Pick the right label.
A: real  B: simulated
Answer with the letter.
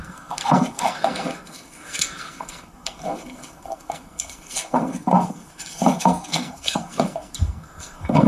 B